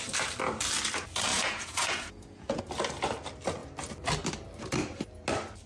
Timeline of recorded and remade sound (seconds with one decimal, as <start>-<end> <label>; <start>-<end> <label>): 0.0-1.3 recorded; 1.3-2.6 remade; 2.6-5.7 recorded